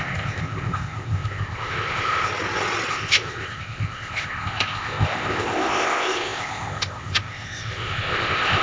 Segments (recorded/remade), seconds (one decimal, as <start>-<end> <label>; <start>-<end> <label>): 0.0-2.3 remade; 2.3-2.9 recorded; 2.9-8.6 remade